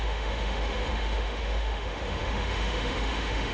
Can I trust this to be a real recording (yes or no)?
no